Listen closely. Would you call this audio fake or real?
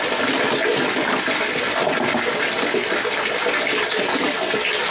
real